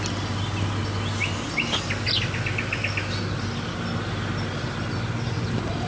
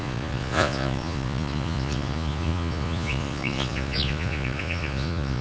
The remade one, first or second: second